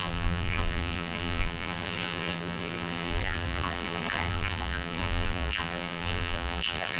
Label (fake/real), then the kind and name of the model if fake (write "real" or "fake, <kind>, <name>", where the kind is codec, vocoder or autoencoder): fake, vocoder, BigVGAN v2